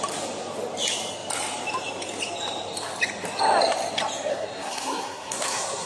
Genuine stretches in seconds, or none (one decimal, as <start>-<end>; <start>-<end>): 0.0-4.3